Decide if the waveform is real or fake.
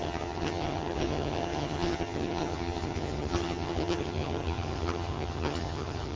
fake